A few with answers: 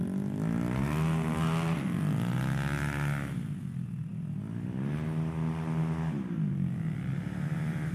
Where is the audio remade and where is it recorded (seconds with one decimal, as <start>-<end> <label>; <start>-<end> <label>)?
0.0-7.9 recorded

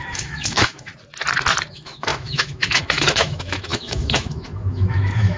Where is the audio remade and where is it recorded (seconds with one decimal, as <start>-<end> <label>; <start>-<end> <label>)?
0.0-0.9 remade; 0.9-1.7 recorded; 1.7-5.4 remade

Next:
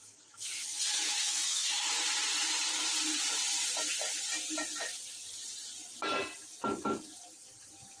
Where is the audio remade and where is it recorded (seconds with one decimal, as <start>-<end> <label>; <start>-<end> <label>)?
0.0-1.9 remade; 1.9-8.0 recorded

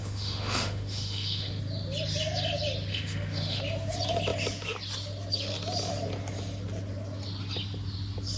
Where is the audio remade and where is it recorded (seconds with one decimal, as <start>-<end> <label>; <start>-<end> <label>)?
0.0-1.6 remade; 1.6-2.9 recorded; 2.9-3.6 remade; 3.6-8.4 recorded

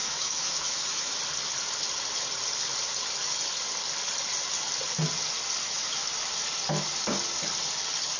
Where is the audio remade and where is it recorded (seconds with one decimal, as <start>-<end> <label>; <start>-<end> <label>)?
0.0-1.2 remade; 1.2-5.6 recorded; 5.6-6.1 remade; 6.1-8.2 recorded

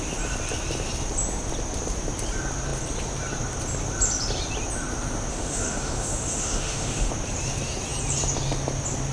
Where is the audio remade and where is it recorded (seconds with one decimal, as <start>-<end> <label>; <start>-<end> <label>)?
0.0-5.3 recorded; 5.3-7.1 remade; 7.1-9.1 recorded

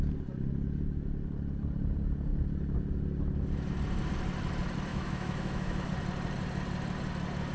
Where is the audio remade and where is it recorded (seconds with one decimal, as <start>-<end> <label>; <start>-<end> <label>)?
0.0-4.9 recorded; 4.9-5.9 remade; 5.9-7.5 recorded

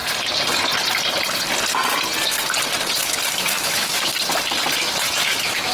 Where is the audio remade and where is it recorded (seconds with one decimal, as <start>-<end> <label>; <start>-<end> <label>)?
0.0-3.4 recorded; 3.4-4.1 remade; 4.1-5.1 recorded; 5.1-5.7 remade